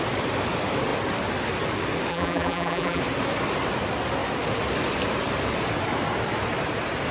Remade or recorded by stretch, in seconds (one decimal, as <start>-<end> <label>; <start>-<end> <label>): 0.0-2.1 recorded; 2.1-3.0 remade; 3.0-7.1 recorded